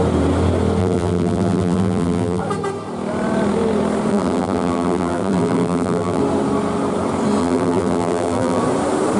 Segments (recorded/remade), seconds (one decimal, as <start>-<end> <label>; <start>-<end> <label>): 0.0-0.8 recorded; 0.8-2.4 remade; 2.4-4.1 recorded; 4.1-6.2 remade; 6.2-7.4 recorded; 7.4-8.6 remade; 8.6-9.2 recorded